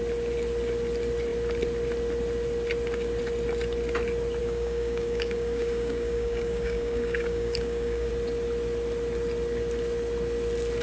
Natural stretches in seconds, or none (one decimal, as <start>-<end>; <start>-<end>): 0.0-4.4; 8.1-10.8

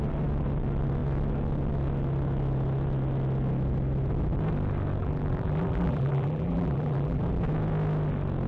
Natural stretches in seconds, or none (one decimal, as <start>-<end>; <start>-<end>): 0.0-5.0; 7.2-8.5

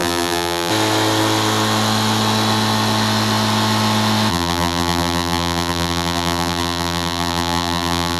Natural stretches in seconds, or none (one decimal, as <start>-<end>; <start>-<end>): 0.7-4.3

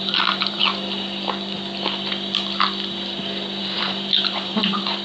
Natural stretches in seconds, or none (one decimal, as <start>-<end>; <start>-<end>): 0.6-3.6

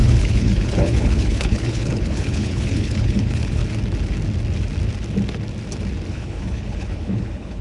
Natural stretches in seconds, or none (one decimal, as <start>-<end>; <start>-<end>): 3.6-6.1

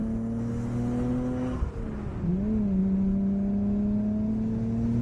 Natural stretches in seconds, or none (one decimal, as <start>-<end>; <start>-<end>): 0.0-5.0

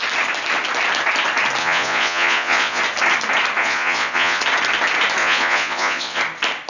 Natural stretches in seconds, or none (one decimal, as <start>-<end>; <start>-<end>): 0.0-1.6; 2.8-3.6; 4.4-5.2; 6.2-6.7

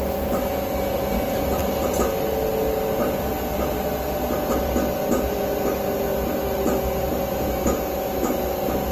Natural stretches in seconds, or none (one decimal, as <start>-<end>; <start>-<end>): 0.0-8.9